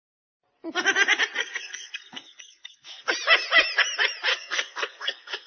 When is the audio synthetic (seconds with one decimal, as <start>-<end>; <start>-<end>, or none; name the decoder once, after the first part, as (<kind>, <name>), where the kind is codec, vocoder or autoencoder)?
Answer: 1.4-3.1 (codec, SNAC); 4.3-5.5